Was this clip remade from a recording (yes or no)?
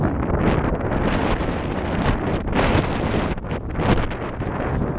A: no